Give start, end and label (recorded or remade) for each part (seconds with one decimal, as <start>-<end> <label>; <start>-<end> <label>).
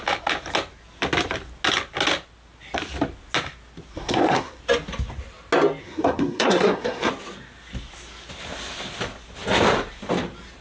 0.0-3.9 recorded; 3.9-4.6 remade; 4.6-5.8 recorded; 5.8-7.1 remade; 7.1-10.6 recorded